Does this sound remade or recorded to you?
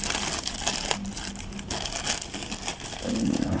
recorded